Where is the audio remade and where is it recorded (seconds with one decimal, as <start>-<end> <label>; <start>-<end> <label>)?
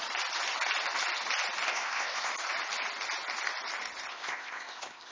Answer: 0.0-1.7 recorded; 1.7-2.3 remade; 2.3-4.1 recorded; 4.1-5.1 remade